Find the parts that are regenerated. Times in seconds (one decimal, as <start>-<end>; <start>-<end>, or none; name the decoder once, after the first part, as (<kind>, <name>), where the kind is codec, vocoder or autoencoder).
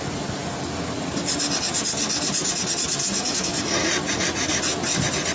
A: 3.0-3.6 (autoencoder, DAC-VAE)